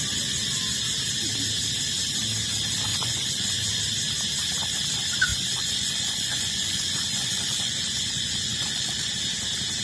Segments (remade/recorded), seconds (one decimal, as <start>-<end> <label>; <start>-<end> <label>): 0.0-2.9 recorded; 2.9-3.8 remade; 3.8-5.3 recorded; 5.3-9.1 remade; 9.1-9.8 recorded